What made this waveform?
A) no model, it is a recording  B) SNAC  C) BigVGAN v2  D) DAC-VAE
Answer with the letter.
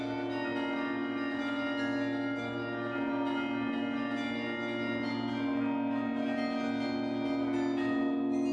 A